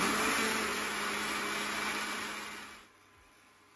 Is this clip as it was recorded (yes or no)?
yes